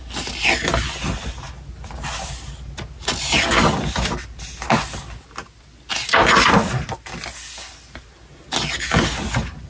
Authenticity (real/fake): real